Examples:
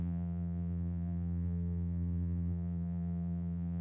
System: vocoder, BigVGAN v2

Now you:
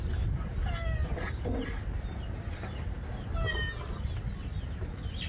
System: none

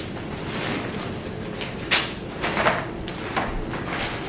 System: none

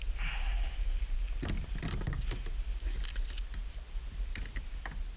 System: none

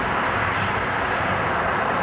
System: vocoder, BigVGAN v2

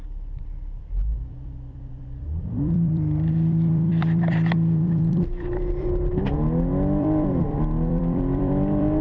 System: vocoder, BigVGAN v2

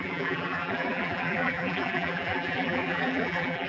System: vocoder, BigVGAN v2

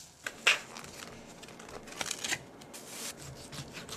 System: none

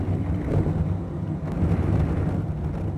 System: none